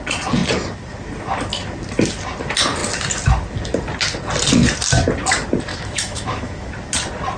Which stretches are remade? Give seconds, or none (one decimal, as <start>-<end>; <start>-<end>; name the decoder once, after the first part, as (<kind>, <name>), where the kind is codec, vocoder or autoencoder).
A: 5.7-6.7 (autoencoder, DAC-VAE)